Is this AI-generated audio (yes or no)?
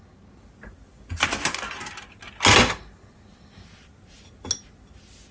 no